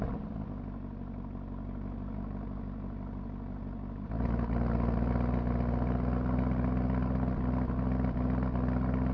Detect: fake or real real